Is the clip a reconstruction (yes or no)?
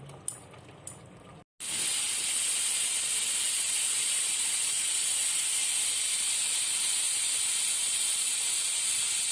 no